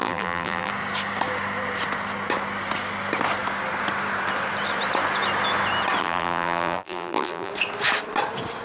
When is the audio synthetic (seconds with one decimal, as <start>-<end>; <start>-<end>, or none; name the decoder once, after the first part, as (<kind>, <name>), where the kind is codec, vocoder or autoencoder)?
0.0-0.7 (vocoder, BigVGAN v2); 6.0-7.5

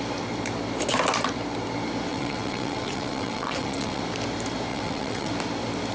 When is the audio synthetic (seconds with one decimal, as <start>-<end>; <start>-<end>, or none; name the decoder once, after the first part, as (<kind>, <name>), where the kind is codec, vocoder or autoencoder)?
2.1-4.0 (vocoder, WaveNeXt); 4.7-5.3

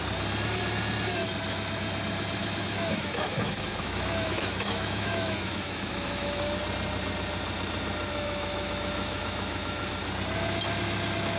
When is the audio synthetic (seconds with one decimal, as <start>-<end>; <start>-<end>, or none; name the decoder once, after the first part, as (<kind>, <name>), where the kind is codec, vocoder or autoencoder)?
2.4-6.6 (autoencoder, DAC-VAE); 8.1-9.9

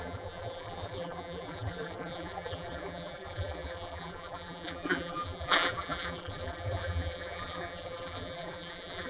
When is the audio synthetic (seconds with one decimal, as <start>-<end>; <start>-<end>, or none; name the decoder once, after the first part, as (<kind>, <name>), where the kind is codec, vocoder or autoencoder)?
0.0-9.1 (vocoder, BigVGAN v2)

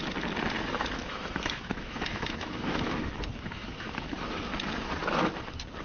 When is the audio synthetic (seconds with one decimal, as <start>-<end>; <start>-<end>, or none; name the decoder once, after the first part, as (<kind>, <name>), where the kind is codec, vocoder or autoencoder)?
1.0-4.5 (autoencoder, DAC-VAE)

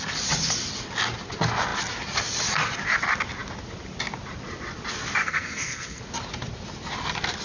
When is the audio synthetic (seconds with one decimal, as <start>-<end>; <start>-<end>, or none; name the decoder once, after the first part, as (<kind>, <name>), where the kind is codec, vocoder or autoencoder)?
5.2-6.0 (codec, SNAC)

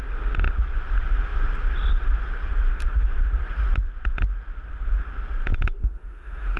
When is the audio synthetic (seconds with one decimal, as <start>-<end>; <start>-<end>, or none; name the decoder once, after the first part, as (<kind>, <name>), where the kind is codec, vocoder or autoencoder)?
5.8-6.6 (autoencoder, DAC-VAE)

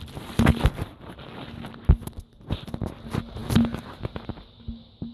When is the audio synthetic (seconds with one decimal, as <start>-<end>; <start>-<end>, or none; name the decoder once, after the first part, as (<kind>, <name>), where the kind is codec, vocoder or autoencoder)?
none